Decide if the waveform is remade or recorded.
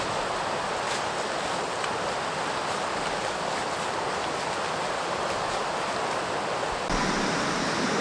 recorded